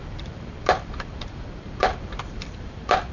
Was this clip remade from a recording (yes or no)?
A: yes